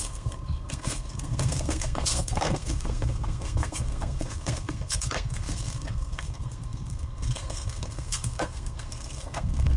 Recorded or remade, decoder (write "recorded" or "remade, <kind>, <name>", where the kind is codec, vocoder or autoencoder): remade, codec, SNAC